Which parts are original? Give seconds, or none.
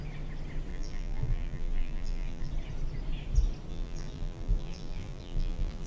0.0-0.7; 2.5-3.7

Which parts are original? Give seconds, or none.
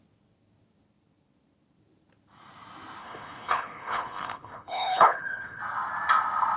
0.0-3.0; 5.6-6.6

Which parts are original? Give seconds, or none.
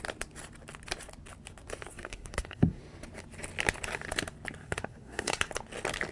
0.0-1.9; 2.8-4.6; 5.5-6.1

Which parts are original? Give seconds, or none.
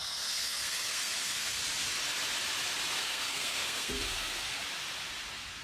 1.6-3.0; 4.6-5.6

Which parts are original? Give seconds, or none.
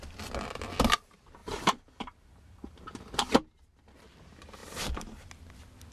0.0-1.4; 3.3-4.6; 5.3-5.9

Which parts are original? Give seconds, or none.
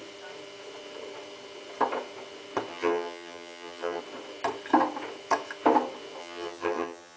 0.0-2.7; 4.0-6.2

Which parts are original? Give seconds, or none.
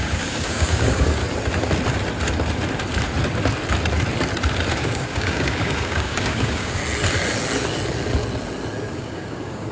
1.2-4.7; 6.8-9.0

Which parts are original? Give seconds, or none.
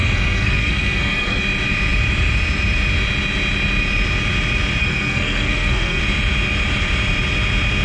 1.4-4.8; 6.0-7.8